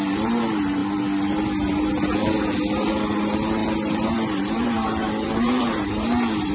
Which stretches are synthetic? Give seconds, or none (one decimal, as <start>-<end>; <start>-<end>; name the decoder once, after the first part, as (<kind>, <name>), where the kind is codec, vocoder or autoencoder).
0.0-0.8 (vocoder, BigVGAN v2); 3.2-6.5